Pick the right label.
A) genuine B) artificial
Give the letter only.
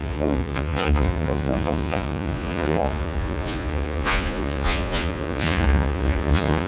B